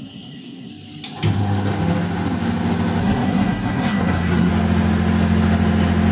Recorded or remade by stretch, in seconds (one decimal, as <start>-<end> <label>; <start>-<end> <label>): 0.0-0.7 remade; 0.7-3.0 recorded; 3.0-4.5 remade; 4.5-6.1 recorded